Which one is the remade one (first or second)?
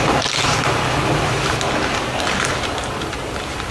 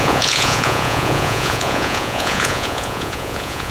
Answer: second